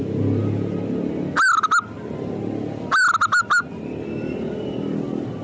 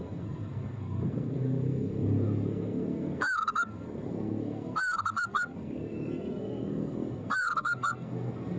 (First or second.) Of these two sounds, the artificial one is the second